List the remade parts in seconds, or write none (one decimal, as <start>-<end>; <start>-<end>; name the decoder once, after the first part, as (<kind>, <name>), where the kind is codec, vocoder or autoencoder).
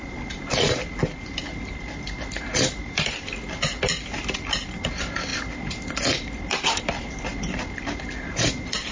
none